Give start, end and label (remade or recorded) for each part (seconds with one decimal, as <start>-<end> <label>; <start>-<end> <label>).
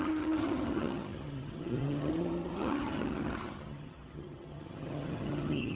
0.0-5.8 remade